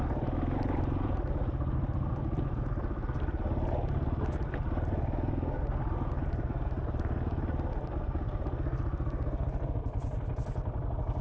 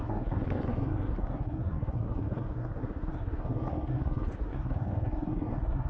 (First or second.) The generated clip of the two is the second